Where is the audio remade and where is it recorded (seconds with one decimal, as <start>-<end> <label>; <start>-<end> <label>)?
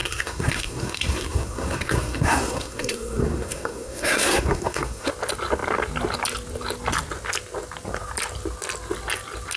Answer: 0.0-5.1 remade; 5.1-9.6 recorded